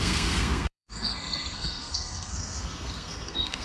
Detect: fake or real fake